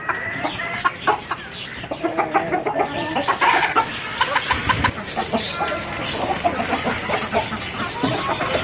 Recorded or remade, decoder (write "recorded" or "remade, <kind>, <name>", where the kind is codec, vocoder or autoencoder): recorded